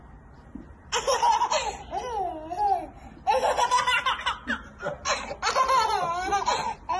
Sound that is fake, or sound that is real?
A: real